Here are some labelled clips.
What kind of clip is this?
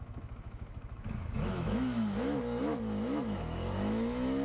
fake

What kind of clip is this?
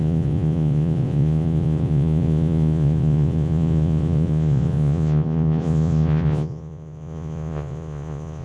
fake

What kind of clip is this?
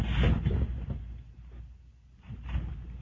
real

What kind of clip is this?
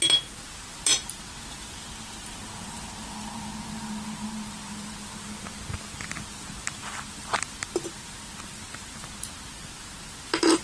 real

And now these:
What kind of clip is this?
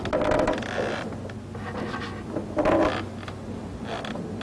real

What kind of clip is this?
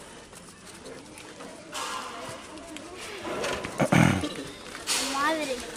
real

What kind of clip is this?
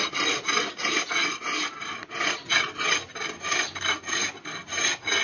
real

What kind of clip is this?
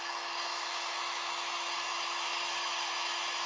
fake